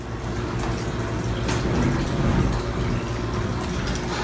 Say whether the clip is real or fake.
real